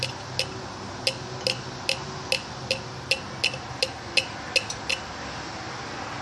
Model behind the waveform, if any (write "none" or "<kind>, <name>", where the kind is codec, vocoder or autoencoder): none